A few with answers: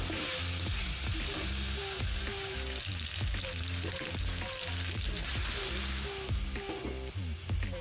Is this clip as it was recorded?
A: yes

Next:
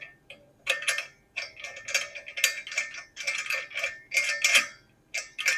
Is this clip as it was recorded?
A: yes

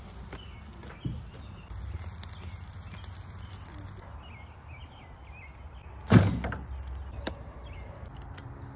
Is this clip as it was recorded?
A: yes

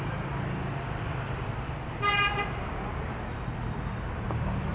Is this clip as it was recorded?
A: yes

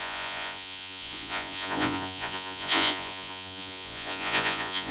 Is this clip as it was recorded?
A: no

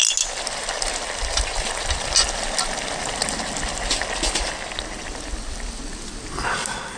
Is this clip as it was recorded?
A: yes